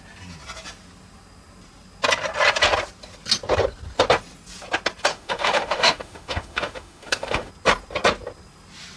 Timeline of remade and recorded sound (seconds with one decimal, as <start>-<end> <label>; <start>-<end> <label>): 0.0-5.1 recorded; 5.1-7.5 remade; 7.5-9.0 recorded